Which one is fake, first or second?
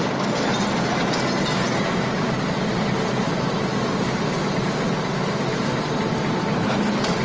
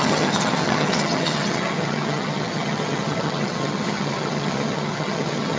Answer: second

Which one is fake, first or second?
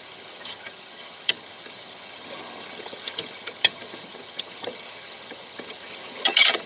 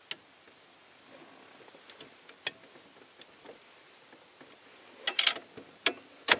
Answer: first